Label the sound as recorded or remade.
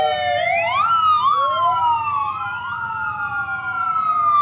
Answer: recorded